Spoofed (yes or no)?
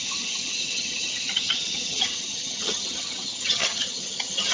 yes